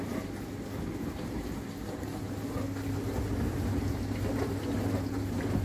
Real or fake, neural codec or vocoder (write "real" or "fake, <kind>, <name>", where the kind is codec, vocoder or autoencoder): real